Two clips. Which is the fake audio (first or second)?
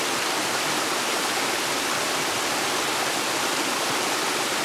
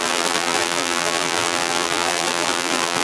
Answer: second